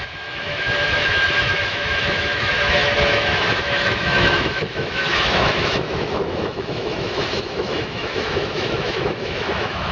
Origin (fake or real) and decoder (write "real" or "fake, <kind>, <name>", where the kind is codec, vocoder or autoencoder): fake, autoencoder, DAC-VAE